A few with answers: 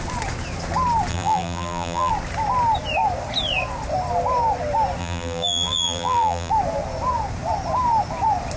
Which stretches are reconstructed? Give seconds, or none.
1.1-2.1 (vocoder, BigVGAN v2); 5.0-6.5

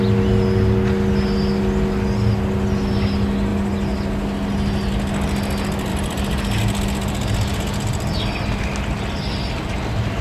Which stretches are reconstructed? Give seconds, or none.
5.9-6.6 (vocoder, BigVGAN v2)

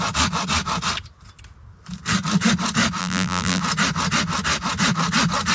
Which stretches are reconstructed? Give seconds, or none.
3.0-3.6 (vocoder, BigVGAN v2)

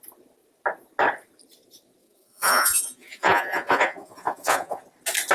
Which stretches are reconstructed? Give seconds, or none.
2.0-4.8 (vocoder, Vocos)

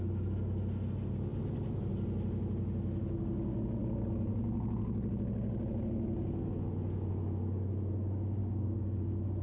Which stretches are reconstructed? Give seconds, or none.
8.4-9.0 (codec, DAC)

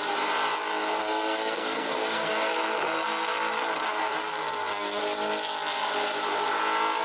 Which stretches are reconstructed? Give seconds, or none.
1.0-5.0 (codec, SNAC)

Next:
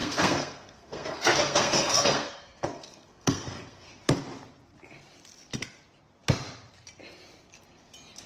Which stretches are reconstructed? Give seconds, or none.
0.0-3.9 (codec, SNAC)